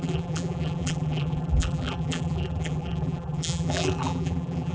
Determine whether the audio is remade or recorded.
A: remade